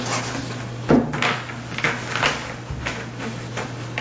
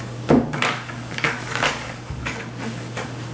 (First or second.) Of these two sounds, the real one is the first